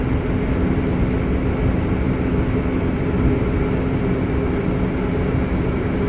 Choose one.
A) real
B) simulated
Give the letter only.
A